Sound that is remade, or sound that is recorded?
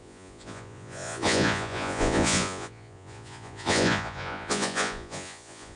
remade